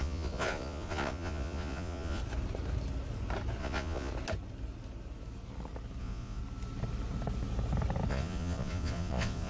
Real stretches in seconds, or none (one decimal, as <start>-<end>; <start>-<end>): 2.2-3.6; 4.1-6.0; 6.4-8.1